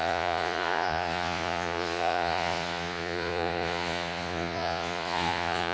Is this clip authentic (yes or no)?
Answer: no